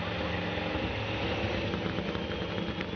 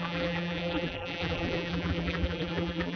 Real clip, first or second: first